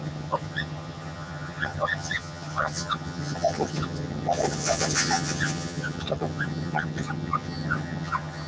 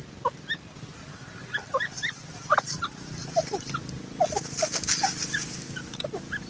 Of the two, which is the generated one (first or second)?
first